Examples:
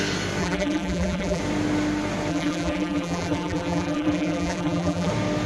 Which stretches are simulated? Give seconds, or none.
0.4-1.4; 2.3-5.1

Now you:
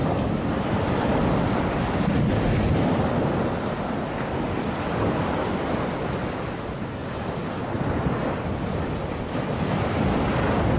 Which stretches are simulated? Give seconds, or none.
none

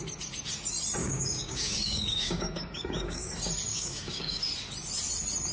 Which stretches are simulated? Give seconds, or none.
1.0-3.3; 3.7-4.4

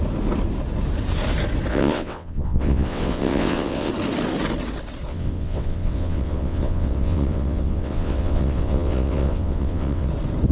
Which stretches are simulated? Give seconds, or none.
1.7-3.9; 5.1-10.1